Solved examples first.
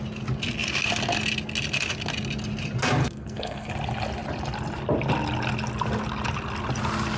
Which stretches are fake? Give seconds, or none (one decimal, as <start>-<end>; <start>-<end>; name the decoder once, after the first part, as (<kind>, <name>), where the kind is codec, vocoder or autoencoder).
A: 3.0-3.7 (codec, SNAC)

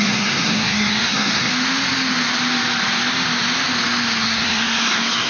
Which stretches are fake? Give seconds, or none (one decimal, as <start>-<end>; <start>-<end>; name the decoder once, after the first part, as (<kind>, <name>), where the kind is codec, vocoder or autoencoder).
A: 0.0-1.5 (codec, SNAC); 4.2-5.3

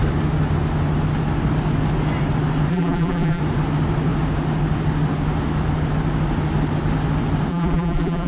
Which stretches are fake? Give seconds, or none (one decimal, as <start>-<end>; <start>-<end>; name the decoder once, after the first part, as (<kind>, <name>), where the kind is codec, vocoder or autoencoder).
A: 2.7-3.4 (vocoder, BigVGAN v2); 7.5-8.3

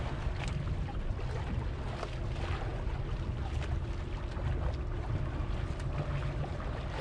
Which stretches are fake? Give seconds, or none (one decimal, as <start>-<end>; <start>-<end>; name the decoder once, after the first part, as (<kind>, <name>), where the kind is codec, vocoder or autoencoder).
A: none

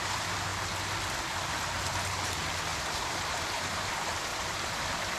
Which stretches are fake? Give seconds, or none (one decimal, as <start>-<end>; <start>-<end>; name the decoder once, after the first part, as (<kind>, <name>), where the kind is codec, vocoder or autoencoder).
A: 2.7-3.9 (vocoder, BigVGAN v2); 4.3-4.8